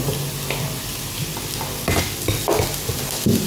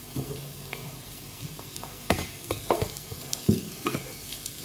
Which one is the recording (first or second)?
first